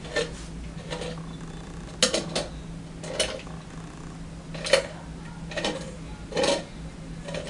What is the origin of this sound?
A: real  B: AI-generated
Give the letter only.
A